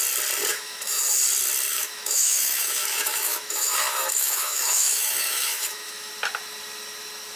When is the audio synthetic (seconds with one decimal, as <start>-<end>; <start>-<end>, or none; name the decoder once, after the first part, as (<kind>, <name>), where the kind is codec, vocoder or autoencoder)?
0.5-1.0 (autoencoder, DAC-VAE); 1.7-6.1